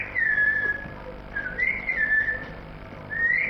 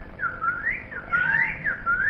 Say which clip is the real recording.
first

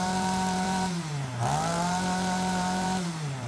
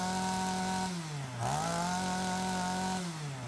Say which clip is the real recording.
second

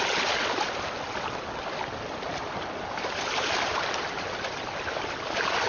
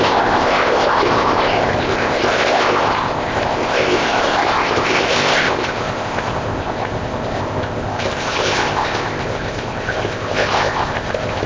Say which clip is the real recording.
first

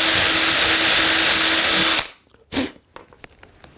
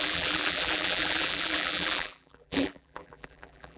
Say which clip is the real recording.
first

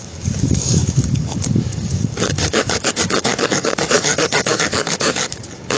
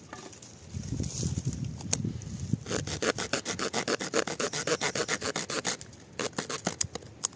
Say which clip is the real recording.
second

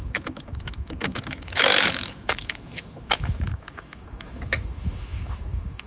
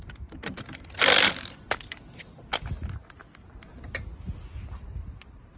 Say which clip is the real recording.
second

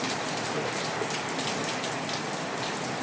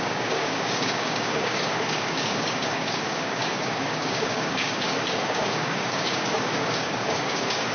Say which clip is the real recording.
first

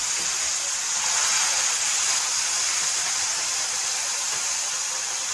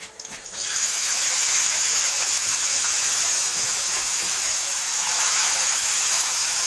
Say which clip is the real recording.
first